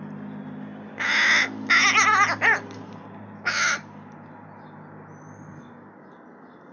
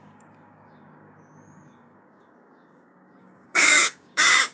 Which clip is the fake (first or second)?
second